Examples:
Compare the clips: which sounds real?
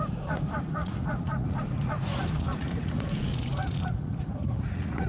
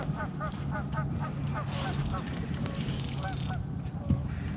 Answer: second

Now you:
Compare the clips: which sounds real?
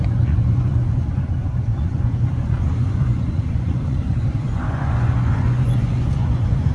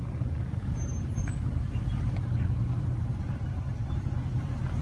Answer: second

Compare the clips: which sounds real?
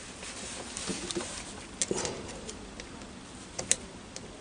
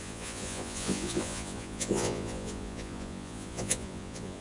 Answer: first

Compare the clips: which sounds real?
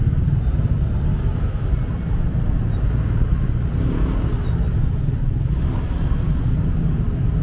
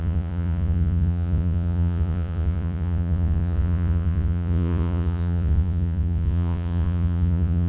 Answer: first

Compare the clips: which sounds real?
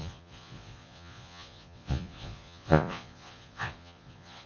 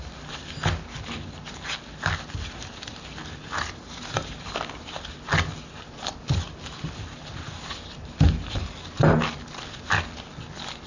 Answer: second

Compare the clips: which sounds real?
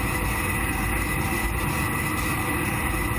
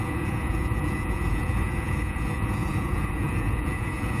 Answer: first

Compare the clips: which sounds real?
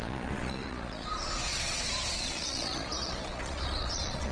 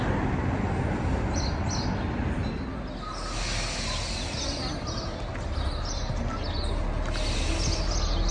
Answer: second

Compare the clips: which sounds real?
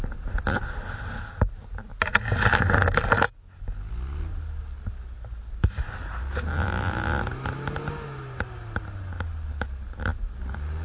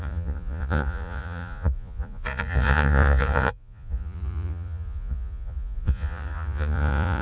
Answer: first